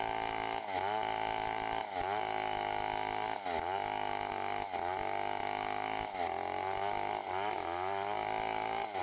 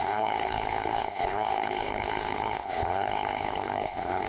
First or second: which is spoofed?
second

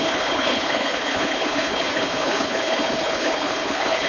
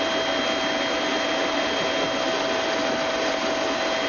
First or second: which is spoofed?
first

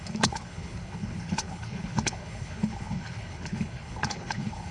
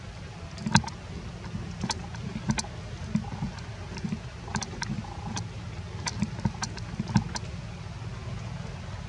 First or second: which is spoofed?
first